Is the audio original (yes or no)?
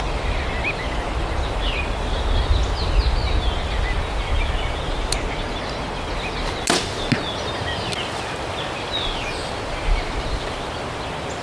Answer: yes